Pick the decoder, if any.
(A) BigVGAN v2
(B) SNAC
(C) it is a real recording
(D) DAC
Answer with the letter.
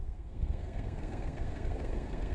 B